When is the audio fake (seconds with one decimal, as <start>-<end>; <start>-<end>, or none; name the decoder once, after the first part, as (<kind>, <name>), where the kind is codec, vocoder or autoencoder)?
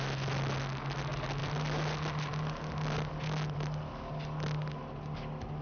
none